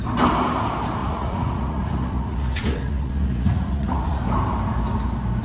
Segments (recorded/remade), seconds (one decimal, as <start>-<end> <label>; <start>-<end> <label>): 0.0-1.0 recorded; 1.0-4.2 remade; 4.2-5.4 recorded

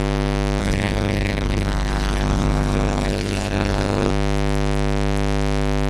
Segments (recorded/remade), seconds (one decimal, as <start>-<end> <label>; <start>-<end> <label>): 0.0-0.6 recorded; 0.6-4.1 remade; 4.1-5.9 recorded

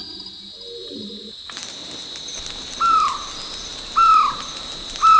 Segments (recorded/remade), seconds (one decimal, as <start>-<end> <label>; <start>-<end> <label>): 0.0-5.2 recorded

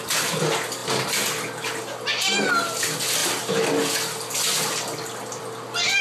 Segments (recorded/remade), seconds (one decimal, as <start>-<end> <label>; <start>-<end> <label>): 0.0-6.0 recorded